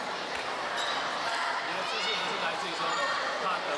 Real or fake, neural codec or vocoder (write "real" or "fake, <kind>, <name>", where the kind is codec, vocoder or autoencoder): fake, vocoder, BigVGAN v2